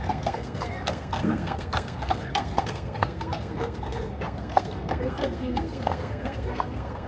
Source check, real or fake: fake